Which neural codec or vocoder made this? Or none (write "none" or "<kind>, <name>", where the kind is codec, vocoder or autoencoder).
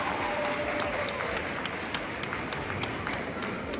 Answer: none